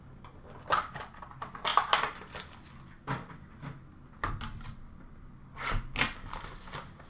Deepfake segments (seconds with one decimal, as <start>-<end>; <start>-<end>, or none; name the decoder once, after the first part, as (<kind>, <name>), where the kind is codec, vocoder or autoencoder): none

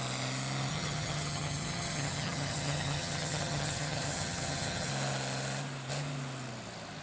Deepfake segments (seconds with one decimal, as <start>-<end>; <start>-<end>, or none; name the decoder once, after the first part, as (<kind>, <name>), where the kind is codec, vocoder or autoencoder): 0.7-4.9 (vocoder, HiFi-GAN)

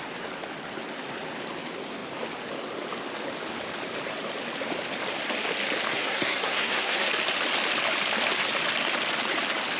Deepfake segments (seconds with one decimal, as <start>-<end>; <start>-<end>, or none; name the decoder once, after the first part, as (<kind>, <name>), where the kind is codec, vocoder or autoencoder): 5.9-7.1 (codec, SNAC)

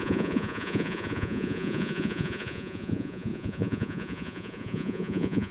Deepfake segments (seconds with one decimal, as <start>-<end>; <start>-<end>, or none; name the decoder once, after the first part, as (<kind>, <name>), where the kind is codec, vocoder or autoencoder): 0.0-5.5 (vocoder, Vocos)

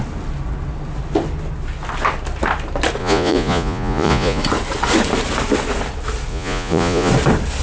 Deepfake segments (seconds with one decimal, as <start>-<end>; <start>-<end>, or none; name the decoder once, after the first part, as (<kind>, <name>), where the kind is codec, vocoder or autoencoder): 3.0-4.4 (vocoder, Vocos); 6.3-7.1

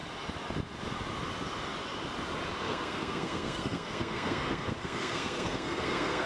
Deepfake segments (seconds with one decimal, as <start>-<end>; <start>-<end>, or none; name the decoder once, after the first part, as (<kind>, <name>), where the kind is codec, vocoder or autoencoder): 2.6-6.3 (codec, SNAC)